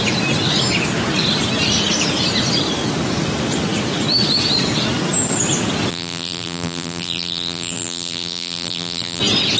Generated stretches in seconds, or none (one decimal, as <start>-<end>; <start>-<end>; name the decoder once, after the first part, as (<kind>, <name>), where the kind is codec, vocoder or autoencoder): 5.9-9.2 (vocoder, BigVGAN v2)